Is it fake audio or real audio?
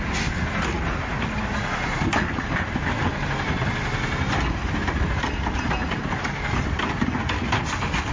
real